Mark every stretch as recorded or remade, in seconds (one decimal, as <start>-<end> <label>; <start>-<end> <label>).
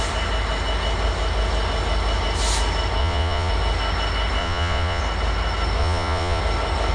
0.0-3.0 recorded; 3.0-3.5 remade; 3.5-4.4 recorded; 4.4-5.0 remade; 5.0-5.8 recorded; 5.8-6.4 remade; 6.4-6.9 recorded